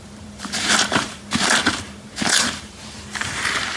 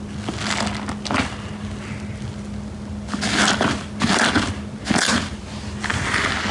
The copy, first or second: first